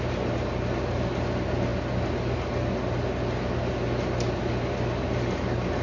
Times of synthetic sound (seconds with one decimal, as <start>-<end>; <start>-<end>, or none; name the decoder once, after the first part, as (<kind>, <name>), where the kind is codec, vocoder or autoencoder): none